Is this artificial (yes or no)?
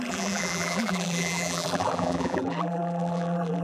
yes